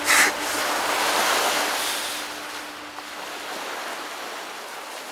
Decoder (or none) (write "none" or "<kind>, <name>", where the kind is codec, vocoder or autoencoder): none